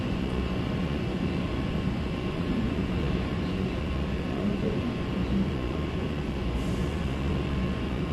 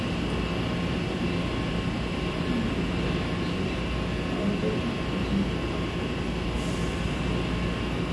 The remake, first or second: first